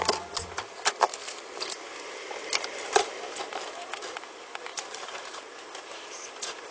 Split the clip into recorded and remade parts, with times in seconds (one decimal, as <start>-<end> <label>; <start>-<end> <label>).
0.0-4.7 recorded; 4.7-6.3 remade; 6.3-6.7 recorded

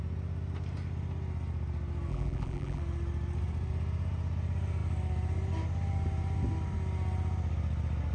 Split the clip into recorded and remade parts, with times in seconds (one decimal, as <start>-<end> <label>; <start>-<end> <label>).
0.0-2.1 recorded; 2.1-2.8 remade; 2.8-8.1 recorded